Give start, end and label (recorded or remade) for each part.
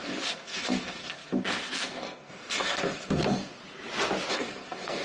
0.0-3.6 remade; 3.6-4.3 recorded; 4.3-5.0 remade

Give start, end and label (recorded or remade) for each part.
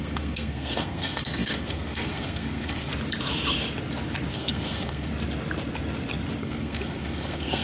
0.0-2.9 remade; 2.9-4.3 recorded; 4.3-5.1 remade; 5.1-6.4 recorded; 6.4-7.6 remade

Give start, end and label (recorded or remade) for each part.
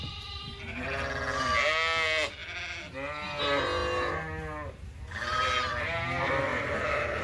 0.0-7.2 recorded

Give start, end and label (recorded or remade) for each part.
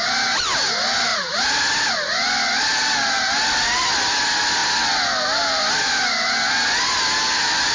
0.0-7.7 recorded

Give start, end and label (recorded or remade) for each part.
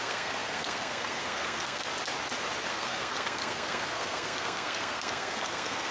0.0-1.9 remade; 1.9-2.7 recorded; 2.7-5.9 remade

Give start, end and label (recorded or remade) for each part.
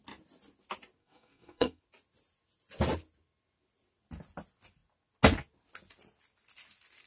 0.0-1.0 recorded; 1.0-1.8 remade; 1.8-7.1 recorded